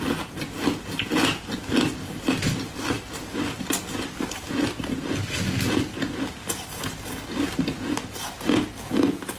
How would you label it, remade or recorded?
recorded